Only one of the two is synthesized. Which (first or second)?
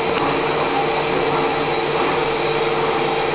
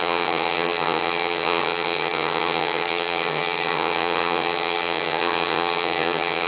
second